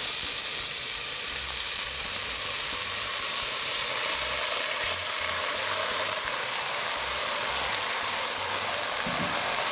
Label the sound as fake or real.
fake